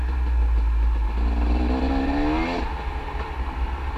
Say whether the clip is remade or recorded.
recorded